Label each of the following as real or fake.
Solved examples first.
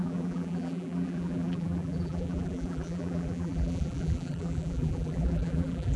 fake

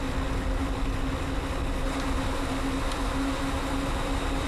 real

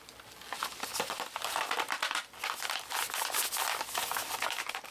real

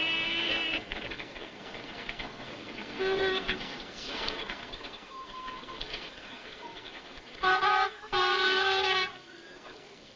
fake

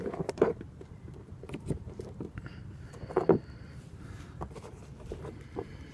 fake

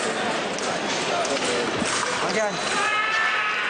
real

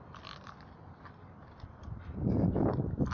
fake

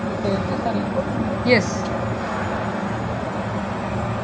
real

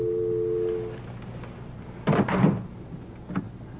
real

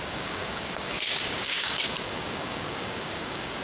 fake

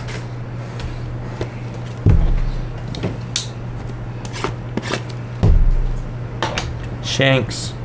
real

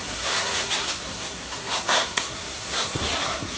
fake